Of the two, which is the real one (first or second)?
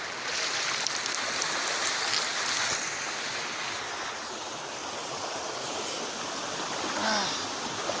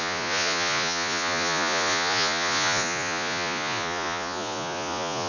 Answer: first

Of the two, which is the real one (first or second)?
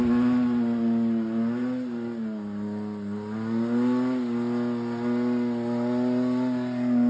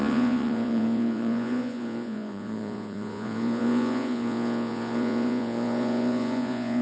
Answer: first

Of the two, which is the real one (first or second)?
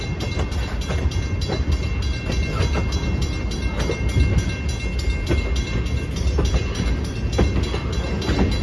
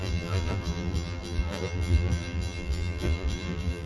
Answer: first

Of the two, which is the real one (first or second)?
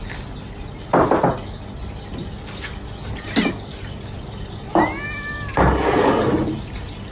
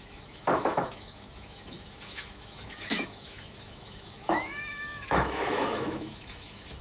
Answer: first